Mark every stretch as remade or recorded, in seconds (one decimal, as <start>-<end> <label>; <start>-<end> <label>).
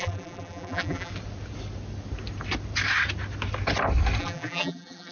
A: 0.0-1.1 remade; 1.1-4.2 recorded; 4.2-5.1 remade